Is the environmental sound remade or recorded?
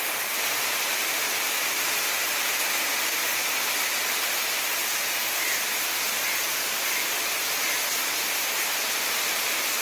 recorded